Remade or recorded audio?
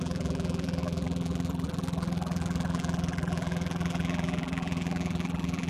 remade